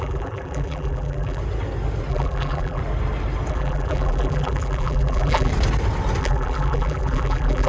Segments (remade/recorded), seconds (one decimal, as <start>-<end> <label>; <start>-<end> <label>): 0.0-1.4 remade; 1.4-2.1 recorded; 2.1-2.8 remade; 2.8-3.5 recorded; 3.5-5.5 remade; 5.5-6.2 recorded; 6.2-7.7 remade